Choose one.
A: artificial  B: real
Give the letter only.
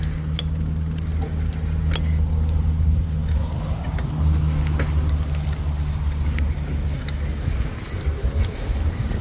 B